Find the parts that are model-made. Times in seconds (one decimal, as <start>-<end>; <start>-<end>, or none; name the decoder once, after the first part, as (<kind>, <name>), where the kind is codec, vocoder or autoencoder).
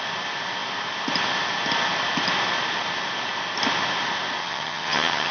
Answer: 4.4-5.3 (vocoder, HiFi-GAN)